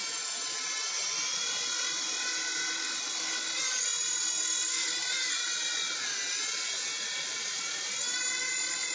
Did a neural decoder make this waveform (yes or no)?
no